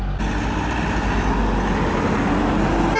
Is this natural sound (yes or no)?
yes